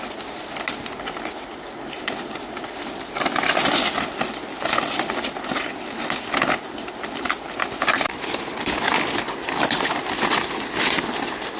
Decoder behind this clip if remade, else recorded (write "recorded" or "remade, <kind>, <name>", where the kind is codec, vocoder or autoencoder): recorded